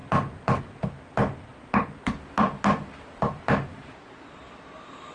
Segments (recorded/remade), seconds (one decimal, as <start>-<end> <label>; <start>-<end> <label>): 0.0-0.6 remade; 0.6-1.5 recorded; 1.5-3.4 remade; 3.4-5.1 recorded

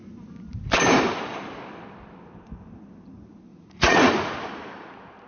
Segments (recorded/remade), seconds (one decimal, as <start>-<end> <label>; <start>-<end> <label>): 0.0-3.5 recorded; 3.5-4.3 remade; 4.3-5.3 recorded

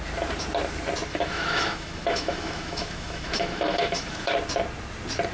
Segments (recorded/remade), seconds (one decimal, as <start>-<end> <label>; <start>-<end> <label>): 0.0-1.1 recorded; 1.1-4.3 remade; 4.3-5.3 recorded

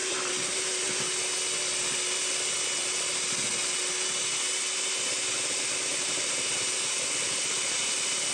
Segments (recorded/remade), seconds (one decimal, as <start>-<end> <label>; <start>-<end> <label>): 0.0-1.1 remade; 1.1-5.9 recorded; 5.9-6.5 remade; 6.5-8.3 recorded

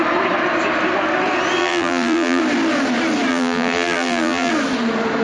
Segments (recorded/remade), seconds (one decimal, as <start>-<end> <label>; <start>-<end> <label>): 0.0-1.6 recorded; 1.6-2.4 remade; 2.4-3.3 recorded; 3.3-4.5 remade; 4.5-5.2 recorded

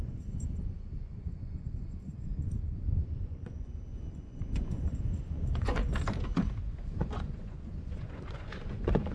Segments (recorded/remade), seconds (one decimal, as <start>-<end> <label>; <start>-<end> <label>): 0.0-5.8 remade; 5.8-6.6 recorded; 6.6-9.1 remade

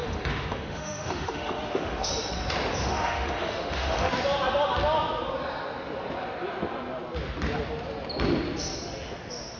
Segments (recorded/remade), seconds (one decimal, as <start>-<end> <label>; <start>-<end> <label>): 0.0-2.1 remade; 2.1-2.8 recorded; 2.8-4.1 remade; 4.1-9.6 recorded

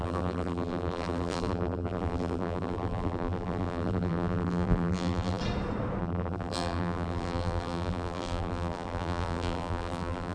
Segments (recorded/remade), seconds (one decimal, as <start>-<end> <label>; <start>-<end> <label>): 0.0-5.4 remade; 5.4-6.0 recorded; 6.0-10.3 remade